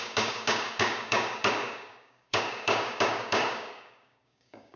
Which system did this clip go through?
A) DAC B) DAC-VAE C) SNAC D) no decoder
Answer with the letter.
A